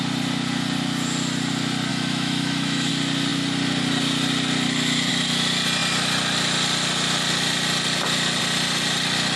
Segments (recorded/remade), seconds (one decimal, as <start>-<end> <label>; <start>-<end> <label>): 0.0-1.9 recorded; 1.9-2.9 remade; 2.9-9.4 recorded

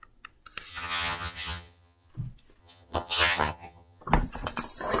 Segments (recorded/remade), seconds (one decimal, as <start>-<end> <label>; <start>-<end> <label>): 0.0-0.7 recorded; 0.7-2.1 remade; 2.1-2.6 recorded; 2.6-4.0 remade; 4.0-5.0 recorded

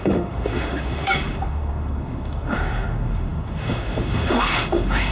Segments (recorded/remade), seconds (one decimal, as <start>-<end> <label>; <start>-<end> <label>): 0.0-5.1 remade

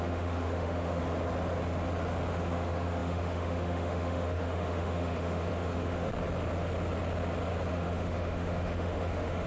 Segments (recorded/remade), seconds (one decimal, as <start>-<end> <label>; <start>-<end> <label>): 0.0-1.0 remade; 1.0-2.3 recorded; 2.3-6.1 remade; 6.1-7.7 recorded; 7.7-9.5 remade

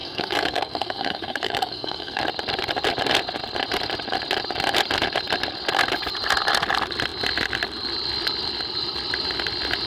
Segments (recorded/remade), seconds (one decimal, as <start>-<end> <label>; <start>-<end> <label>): 0.0-2.2 remade; 2.2-9.9 recorded

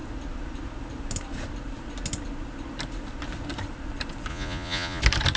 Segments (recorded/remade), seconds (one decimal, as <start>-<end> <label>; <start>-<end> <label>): 0.0-4.3 recorded; 4.3-5.0 remade; 5.0-5.4 recorded

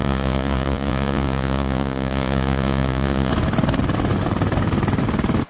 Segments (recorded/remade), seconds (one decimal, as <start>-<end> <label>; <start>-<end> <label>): 0.0-3.3 remade; 3.3-5.5 recorded

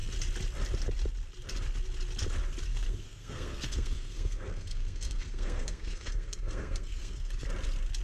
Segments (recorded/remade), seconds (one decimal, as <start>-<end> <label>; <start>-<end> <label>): 0.0-2.7 recorded; 2.7-7.3 remade; 7.3-8.0 recorded